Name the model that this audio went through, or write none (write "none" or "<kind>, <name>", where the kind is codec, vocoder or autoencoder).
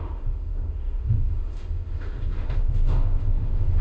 autoencoder, DAC-VAE